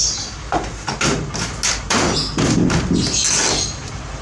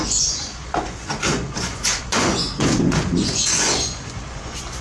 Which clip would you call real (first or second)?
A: first